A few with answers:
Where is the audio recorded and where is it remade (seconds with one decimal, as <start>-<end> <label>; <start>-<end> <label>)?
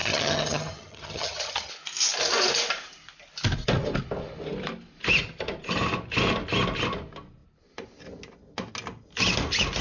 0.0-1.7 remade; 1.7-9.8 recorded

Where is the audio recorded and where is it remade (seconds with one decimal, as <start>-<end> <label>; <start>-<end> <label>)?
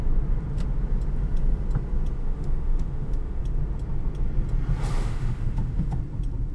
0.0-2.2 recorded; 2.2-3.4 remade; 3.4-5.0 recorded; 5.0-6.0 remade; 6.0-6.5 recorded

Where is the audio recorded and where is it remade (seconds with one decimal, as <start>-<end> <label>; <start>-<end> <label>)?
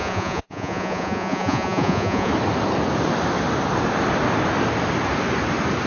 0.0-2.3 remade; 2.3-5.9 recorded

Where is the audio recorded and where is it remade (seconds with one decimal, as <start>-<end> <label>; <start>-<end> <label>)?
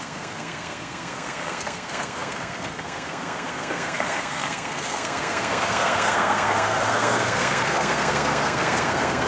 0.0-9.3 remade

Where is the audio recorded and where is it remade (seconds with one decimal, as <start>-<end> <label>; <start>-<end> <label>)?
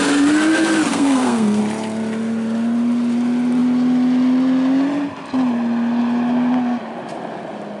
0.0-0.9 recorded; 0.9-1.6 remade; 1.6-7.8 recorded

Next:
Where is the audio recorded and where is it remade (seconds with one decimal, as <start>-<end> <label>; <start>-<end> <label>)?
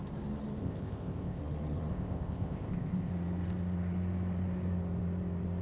0.0-0.6 recorded; 0.6-1.4 remade; 1.4-1.9 recorded; 1.9-3.1 remade; 3.1-5.6 recorded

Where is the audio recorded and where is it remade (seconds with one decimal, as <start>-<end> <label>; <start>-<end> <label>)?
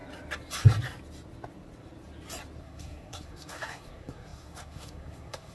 0.0-2.6 recorded; 2.6-5.5 remade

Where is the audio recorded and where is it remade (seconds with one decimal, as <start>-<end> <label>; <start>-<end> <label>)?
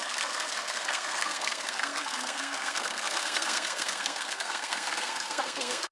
0.0-5.9 remade